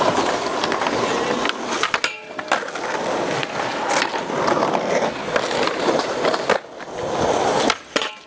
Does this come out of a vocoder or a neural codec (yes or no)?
no